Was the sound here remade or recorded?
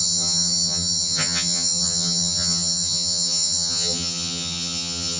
remade